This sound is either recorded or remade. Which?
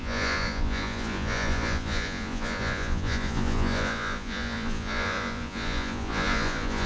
remade